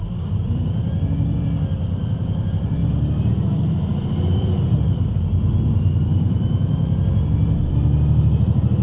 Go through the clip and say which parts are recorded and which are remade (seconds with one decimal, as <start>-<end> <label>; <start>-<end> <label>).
0.0-2.8 remade; 2.8-3.3 recorded; 3.3-8.8 remade